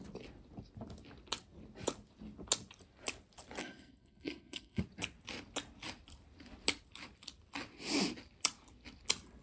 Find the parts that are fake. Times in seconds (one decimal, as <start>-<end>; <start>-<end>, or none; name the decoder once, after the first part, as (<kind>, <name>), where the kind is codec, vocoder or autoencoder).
3.6-4.8 (codec, SNAC)